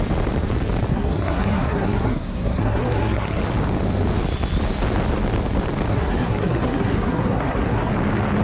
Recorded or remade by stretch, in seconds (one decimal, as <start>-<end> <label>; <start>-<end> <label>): 0.0-0.9 recorded; 0.9-3.4 remade; 3.4-5.9 recorded; 5.9-7.9 remade; 7.9-8.4 recorded